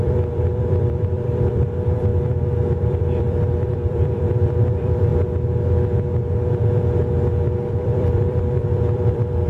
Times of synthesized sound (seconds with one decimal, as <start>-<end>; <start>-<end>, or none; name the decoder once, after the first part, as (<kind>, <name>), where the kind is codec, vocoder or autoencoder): 0.0-2.1 (vocoder, BigVGAN v2); 2.8-5.1; 7.7-9.5